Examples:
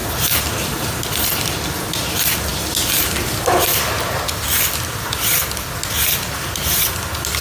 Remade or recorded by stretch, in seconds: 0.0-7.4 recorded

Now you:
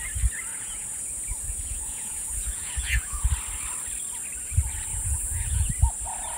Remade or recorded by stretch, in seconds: 0.0-0.5 recorded; 0.5-3.3 remade; 3.3-4.9 recorded; 4.9-5.7 remade; 5.7-6.4 recorded

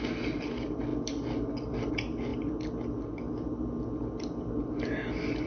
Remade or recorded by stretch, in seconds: 0.0-5.5 recorded

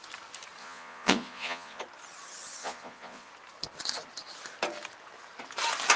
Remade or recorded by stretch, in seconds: 0.0-0.6 recorded; 0.6-1.8 remade; 1.8-2.6 recorded; 2.6-3.3 remade; 3.3-6.0 recorded

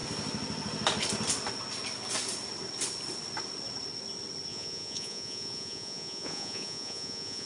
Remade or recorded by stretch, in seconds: 0.0-4.5 recorded; 4.5-7.5 remade

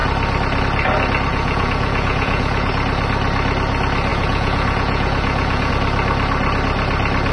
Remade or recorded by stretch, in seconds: 0.0-1.3 recorded; 1.3-2.7 remade; 2.7-4.1 recorded; 4.1-5.7 remade; 5.7-7.3 recorded